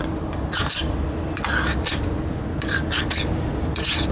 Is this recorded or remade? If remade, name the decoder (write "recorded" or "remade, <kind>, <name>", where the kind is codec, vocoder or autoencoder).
recorded